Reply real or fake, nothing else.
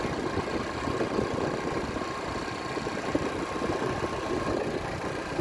real